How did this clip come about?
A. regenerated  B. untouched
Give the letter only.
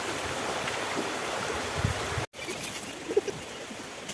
B